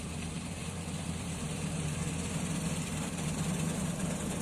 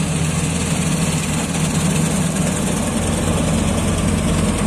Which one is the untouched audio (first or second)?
second